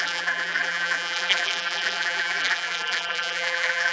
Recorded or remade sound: remade